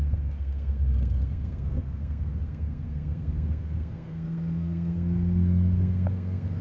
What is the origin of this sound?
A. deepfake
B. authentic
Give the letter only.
A